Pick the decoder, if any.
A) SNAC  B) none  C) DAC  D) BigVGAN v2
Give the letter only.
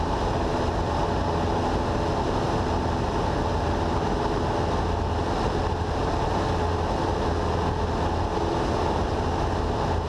B